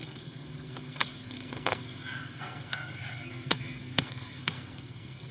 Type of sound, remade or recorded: remade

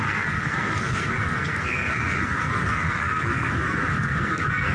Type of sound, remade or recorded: remade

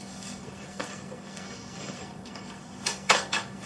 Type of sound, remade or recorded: remade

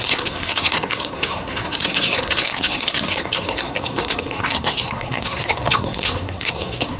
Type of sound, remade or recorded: remade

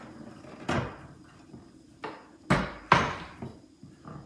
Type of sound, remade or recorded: recorded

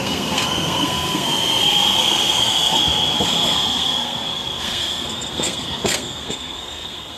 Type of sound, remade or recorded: remade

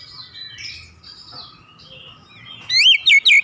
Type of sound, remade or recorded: recorded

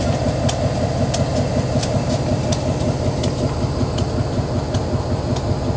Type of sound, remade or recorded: recorded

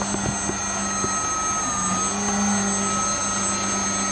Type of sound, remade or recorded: recorded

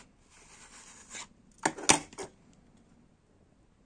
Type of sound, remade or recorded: recorded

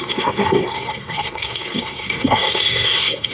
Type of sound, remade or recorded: remade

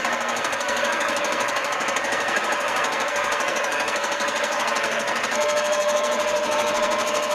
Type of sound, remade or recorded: remade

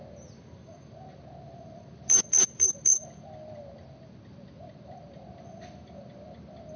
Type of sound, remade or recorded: recorded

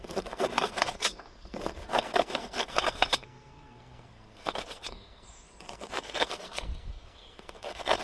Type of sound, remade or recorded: remade